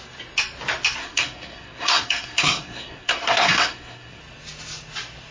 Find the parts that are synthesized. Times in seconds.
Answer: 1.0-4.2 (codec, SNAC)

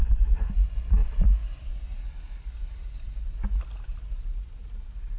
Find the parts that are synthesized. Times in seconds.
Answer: none